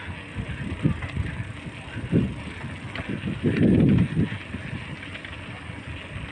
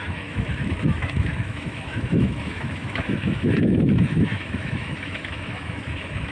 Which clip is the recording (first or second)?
first